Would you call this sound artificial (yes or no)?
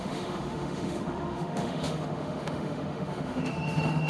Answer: yes